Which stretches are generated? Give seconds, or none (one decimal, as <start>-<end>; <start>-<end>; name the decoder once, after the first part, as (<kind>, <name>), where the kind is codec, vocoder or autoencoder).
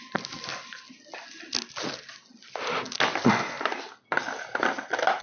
none